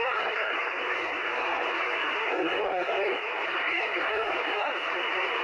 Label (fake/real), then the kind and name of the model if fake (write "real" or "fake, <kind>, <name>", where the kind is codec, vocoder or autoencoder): fake, codec, SNAC